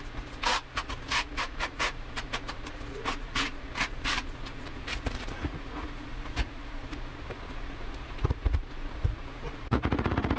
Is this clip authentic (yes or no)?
no